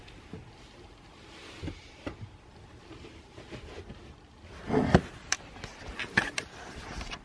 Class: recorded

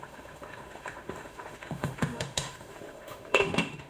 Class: remade